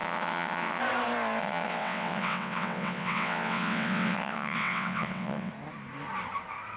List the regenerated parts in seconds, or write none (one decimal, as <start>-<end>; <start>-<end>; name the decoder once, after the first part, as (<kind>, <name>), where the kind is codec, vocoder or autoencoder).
0.0-0.8 (vocoder, WaveNeXt); 1.4-5.5